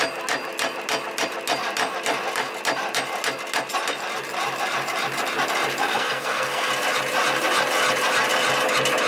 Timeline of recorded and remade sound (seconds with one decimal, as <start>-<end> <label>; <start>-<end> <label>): 0.0-5.8 recorded; 5.8-6.7 remade; 6.7-9.1 recorded